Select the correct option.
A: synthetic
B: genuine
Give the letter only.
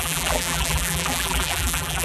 A